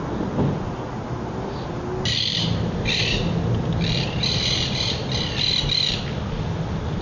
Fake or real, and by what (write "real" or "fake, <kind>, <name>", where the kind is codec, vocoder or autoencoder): real